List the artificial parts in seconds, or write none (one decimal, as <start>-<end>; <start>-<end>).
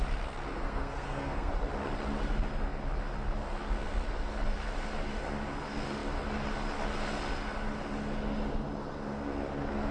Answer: 0.5-1.5